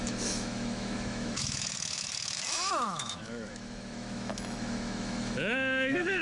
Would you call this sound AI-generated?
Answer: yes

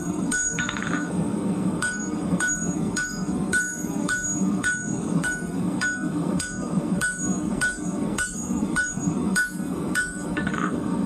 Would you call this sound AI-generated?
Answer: yes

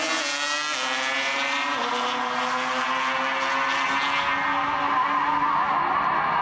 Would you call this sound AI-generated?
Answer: no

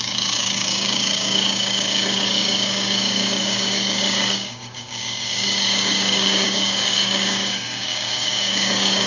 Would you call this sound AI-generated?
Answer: yes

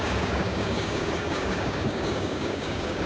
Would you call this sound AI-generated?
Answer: yes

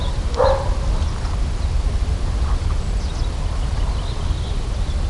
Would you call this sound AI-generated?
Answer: no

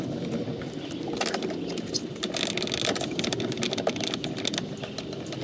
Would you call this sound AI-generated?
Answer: no